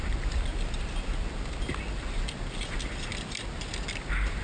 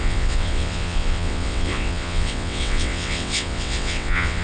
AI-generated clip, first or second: second